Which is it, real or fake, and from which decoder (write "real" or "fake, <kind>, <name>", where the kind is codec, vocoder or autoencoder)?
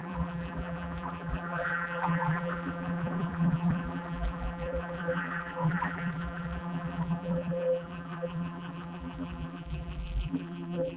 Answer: fake, vocoder, BigVGAN v2